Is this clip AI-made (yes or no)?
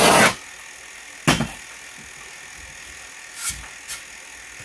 no